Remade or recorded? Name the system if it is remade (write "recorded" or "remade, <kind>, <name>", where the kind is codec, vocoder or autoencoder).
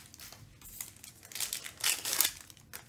recorded